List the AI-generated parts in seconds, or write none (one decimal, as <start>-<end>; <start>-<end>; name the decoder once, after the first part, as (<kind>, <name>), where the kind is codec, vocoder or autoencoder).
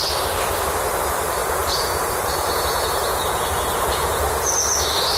1.4-4.5 (vocoder, Vocos)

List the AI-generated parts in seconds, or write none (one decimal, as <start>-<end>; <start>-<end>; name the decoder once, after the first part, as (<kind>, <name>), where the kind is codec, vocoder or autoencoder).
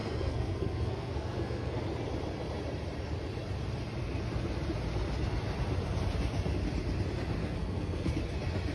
0.0-1.8 (codec, SNAC); 7.4-8.1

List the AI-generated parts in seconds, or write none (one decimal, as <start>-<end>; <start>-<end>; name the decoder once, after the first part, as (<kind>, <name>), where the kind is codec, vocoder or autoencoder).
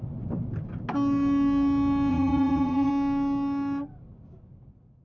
2.1-2.9 (vocoder, Vocos)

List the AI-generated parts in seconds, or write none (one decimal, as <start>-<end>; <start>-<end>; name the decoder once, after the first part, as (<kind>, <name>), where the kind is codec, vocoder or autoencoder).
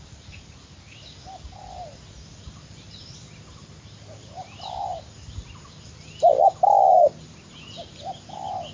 none